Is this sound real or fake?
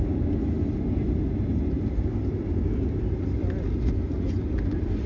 real